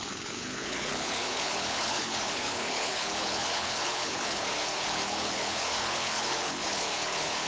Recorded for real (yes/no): no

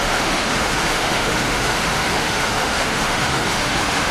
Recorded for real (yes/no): no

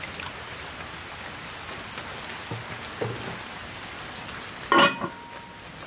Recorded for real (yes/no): yes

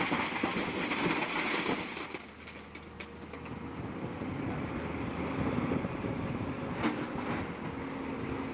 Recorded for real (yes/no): yes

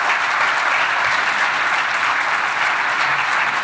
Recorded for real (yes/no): yes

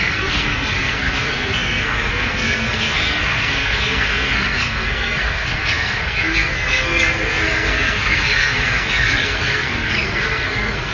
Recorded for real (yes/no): no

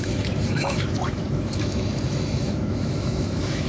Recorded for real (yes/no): no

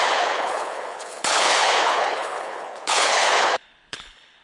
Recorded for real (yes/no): no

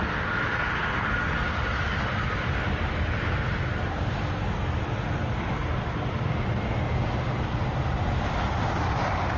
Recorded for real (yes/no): yes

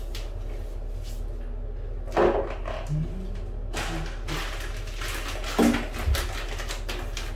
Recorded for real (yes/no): yes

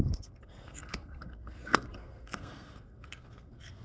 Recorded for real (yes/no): no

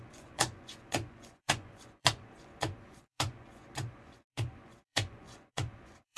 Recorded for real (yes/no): no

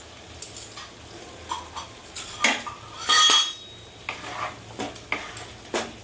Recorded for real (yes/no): yes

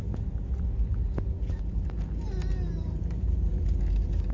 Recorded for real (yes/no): yes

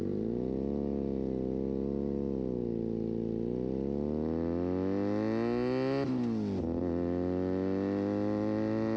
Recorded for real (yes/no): yes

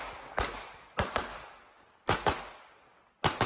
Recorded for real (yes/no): yes